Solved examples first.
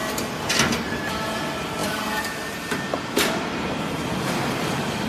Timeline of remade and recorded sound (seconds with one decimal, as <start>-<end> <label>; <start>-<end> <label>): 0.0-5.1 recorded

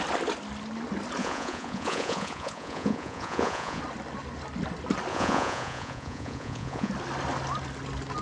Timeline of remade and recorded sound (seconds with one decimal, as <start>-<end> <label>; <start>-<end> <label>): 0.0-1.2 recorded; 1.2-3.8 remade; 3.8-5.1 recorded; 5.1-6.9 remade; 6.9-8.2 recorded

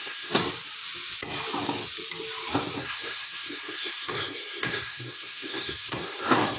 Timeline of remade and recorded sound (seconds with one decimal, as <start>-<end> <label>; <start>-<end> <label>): 0.0-0.4 remade; 0.4-2.8 recorded; 2.8-6.6 remade

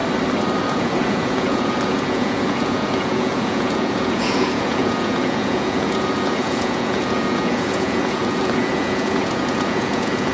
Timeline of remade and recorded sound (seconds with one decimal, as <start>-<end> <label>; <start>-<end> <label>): 0.0-0.6 recorded; 0.6-10.3 remade

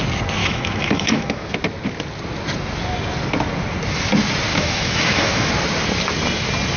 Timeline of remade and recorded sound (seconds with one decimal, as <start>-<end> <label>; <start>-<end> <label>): 0.0-0.4 recorded; 0.4-1.5 remade; 1.5-4.5 recorded; 4.5-5.5 remade; 5.5-6.8 recorded